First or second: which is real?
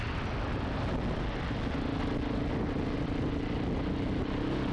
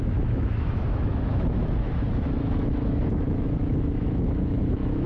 first